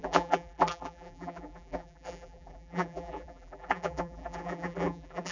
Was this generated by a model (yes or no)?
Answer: yes